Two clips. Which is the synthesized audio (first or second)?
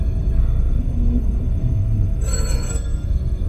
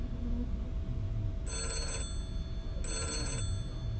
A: first